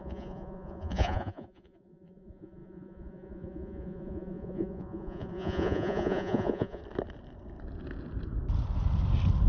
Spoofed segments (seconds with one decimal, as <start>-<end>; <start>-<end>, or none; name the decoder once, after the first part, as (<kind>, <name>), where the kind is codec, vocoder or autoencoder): 0.0-6.8 (vocoder, Vocos)